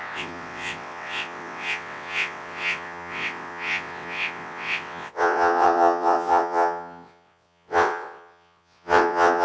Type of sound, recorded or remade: remade